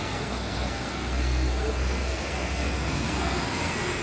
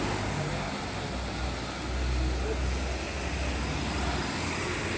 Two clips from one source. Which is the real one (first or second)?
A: second